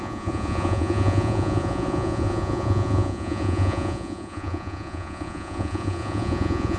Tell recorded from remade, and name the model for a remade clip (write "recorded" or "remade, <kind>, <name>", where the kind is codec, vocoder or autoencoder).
remade, vocoder, Vocos